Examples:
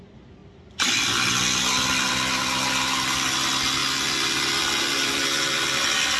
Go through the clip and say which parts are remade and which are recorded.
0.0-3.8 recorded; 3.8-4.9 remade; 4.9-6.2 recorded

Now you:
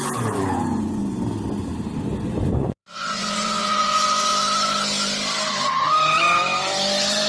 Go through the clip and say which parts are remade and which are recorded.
0.0-1.0 remade; 1.0-2.5 recorded; 2.5-4.3 remade; 4.3-7.3 recorded